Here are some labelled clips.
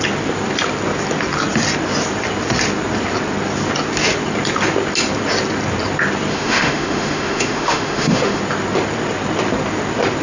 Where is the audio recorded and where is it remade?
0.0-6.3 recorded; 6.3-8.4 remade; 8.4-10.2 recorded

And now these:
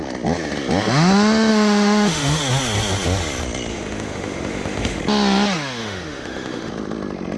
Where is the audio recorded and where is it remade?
0.0-1.5 recorded; 1.5-2.4 remade; 2.4-3.7 recorded; 3.7-5.0 remade; 5.0-5.8 recorded; 5.8-6.7 remade; 6.7-7.4 recorded

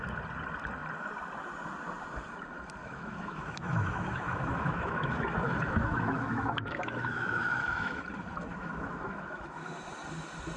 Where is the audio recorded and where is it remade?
0.0-2.8 recorded; 2.8-8.0 remade; 8.0-8.5 recorded; 8.5-9.7 remade; 9.7-10.6 recorded

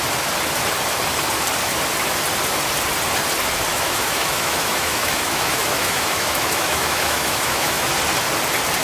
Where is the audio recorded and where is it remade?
0.0-3.7 recorded; 3.7-7.9 remade; 7.9-8.8 recorded

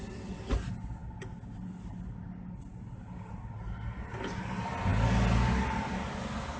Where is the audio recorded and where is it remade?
0.0-6.6 recorded

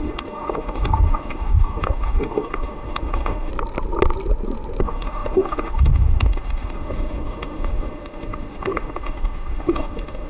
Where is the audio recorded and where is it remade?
0.0-3.5 remade; 3.5-4.8 recorded; 4.8-10.3 remade